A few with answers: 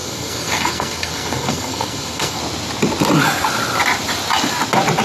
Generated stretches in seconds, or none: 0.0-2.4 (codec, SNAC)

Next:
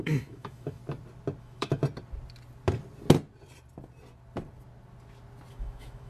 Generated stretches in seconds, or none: 0.0-0.8 (autoencoder, DAC-VAE); 1.4-1.8; 5.5-6.1